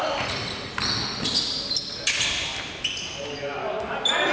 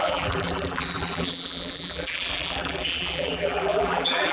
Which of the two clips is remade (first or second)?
second